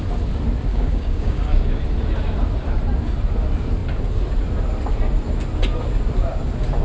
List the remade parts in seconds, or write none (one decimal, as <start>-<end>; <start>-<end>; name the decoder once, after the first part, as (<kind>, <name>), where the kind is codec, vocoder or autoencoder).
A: 0.7-1.8 (codec, DAC)